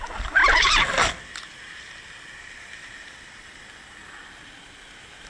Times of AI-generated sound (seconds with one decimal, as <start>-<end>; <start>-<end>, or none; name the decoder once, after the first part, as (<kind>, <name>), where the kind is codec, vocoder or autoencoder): none